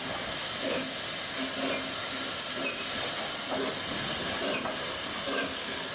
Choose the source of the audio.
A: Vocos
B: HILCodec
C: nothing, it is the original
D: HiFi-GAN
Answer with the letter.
C